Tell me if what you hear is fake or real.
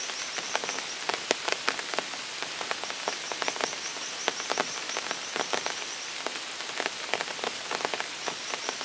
real